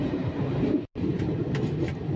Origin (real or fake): real